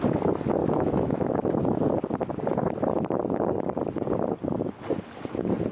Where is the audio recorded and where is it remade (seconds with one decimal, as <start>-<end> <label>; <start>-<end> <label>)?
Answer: 0.0-0.6 recorded; 0.6-1.3 remade; 1.3-5.7 recorded